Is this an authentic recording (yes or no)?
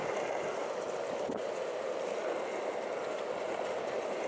yes